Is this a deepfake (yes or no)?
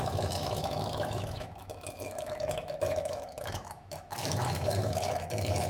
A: yes